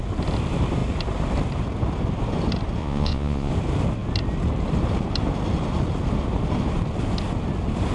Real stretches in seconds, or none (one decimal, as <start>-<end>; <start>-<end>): 0.0-2.8; 3.5-7.9